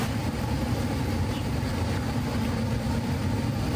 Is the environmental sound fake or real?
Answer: real